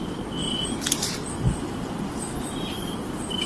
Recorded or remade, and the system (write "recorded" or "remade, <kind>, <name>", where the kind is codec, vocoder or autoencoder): recorded